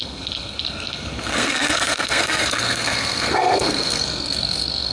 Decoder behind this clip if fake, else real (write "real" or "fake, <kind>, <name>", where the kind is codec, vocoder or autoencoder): fake, codec, SNAC